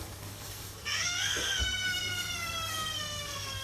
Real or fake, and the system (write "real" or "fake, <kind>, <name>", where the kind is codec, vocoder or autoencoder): fake, codec, SNAC